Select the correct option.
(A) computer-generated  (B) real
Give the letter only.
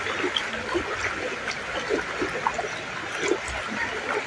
B